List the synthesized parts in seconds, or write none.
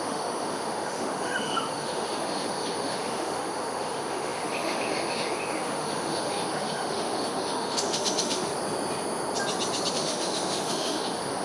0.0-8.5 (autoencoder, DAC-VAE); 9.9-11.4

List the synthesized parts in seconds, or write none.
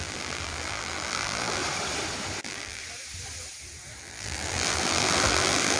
0.0-1.6 (vocoder, BigVGAN v2); 2.4-2.8; 4.0-5.8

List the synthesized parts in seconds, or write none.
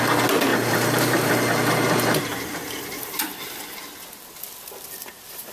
0.5-1.3 (vocoder, BigVGAN v2); 2.3-3.6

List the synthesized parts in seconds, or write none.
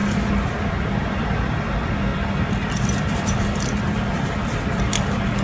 0.0-1.0 (vocoder, BigVGAN v2); 2.1-4.9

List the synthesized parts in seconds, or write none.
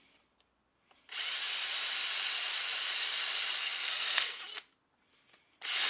3.6-4.4 (codec, SNAC)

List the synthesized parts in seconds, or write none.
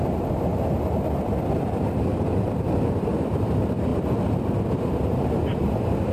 0.0-0.5 (vocoder, BigVGAN v2); 3.0-3.9; 4.8-6.1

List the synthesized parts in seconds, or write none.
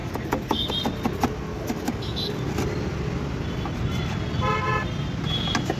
0.0-0.7 (codec, DAC); 1.5-2.3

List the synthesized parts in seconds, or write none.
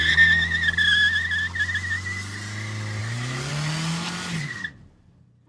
none